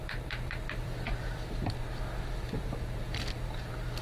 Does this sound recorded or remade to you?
remade